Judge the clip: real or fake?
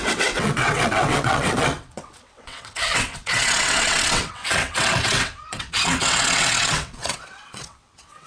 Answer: fake